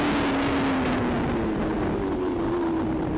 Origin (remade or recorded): recorded